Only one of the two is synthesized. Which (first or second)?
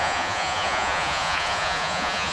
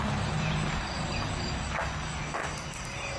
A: first